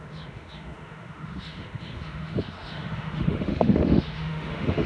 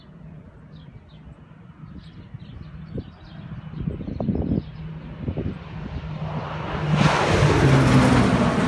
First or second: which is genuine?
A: second